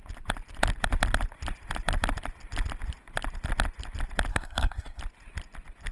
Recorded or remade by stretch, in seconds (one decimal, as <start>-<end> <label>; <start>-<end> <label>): 0.0-4.3 recorded; 4.3-5.0 remade; 5.0-5.9 recorded